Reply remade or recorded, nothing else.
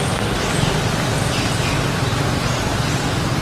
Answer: recorded